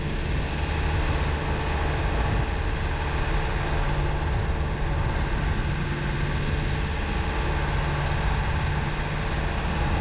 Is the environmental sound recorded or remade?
recorded